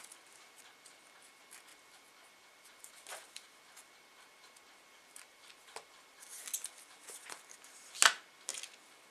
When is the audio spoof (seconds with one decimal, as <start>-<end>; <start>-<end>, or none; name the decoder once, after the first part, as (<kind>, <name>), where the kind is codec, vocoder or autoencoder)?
1.7-6.4 (vocoder, BigVGAN v2)